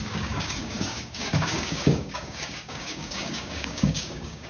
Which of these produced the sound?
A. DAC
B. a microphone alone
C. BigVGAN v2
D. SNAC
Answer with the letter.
A